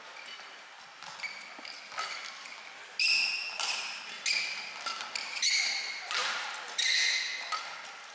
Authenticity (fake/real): real